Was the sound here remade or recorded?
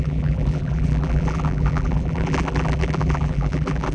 remade